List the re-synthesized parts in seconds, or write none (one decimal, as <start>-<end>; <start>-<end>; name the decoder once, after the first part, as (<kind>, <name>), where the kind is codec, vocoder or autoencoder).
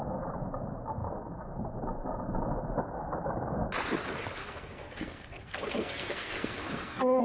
4.4-7.2 (codec, SNAC)